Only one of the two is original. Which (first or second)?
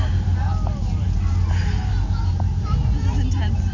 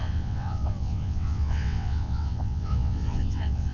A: first